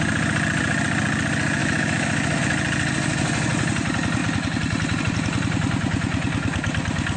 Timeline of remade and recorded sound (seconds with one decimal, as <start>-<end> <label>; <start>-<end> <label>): 0.0-1.6 recorded; 1.6-2.4 remade; 2.4-7.2 recorded